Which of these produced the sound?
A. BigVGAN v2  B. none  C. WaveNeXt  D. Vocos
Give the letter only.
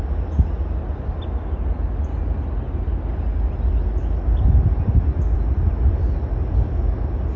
B